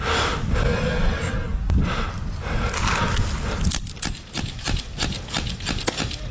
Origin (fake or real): real